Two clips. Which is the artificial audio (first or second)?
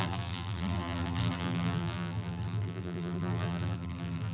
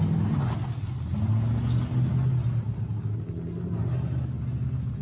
first